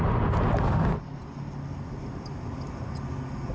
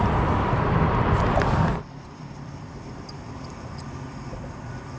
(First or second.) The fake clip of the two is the second